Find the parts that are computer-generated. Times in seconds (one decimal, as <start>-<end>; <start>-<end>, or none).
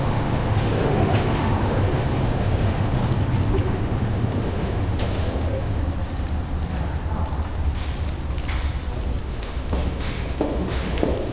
0.0-3.0; 3.6-5.8; 9.2-11.3